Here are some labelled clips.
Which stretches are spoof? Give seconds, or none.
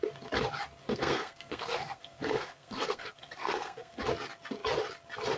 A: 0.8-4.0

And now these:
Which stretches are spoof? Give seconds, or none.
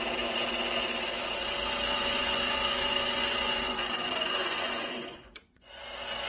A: 2.0-5.8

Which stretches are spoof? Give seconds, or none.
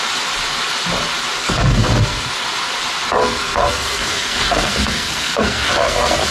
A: 1.4-2.3; 3.2-6.3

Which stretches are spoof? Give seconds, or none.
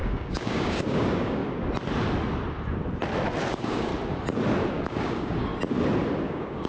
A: 0.0-1.4; 3.5-3.9; 4.7-5.5; 6.3-6.7